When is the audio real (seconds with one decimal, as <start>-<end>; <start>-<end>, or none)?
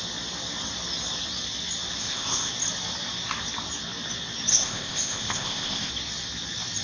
0.0-2.0; 2.5-4.5; 5.9-6.8